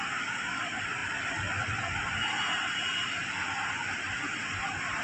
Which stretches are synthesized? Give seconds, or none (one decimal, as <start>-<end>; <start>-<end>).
1.0-4.0